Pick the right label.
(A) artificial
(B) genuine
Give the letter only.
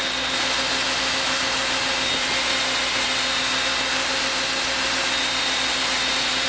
B